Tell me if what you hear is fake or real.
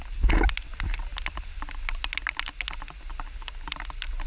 real